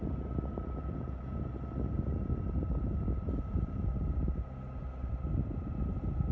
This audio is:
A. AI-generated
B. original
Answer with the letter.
B